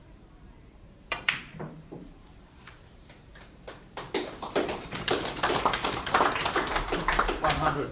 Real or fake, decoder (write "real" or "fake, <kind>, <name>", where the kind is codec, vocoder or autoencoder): fake, vocoder, BigVGAN v2